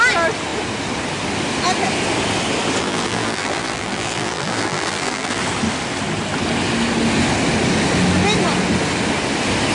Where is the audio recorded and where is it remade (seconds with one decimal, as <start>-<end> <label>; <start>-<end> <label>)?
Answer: 0.0-2.8 recorded; 2.8-5.4 remade; 5.4-9.7 recorded